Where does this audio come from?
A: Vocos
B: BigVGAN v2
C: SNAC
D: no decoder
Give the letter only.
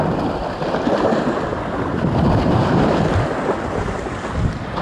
D